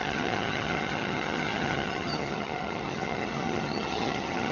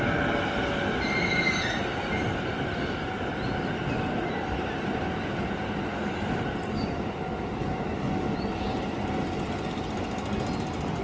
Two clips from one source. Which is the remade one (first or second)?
first